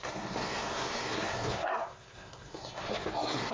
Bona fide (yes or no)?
no